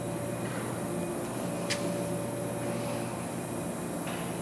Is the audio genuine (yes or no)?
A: yes